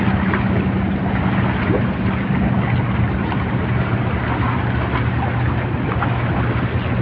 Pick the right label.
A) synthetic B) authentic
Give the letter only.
B